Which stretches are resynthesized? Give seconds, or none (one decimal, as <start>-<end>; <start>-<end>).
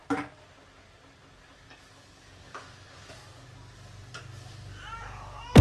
none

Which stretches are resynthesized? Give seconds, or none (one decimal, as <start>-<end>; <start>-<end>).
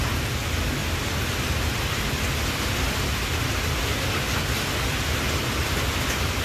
0.8-1.5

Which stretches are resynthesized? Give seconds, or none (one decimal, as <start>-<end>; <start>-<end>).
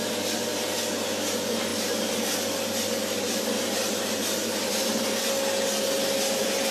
1.7-4.7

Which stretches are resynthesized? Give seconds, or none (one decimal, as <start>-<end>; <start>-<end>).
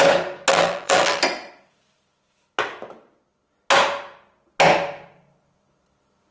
0.5-1.2